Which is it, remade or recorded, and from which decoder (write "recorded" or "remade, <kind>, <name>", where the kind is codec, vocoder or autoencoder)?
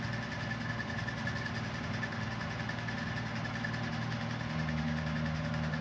recorded